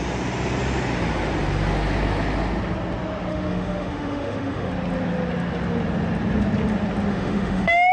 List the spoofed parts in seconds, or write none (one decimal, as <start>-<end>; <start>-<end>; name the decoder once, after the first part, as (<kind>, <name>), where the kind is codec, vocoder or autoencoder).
3.3-4.7 (autoencoder, DAC-VAE); 7.1-7.9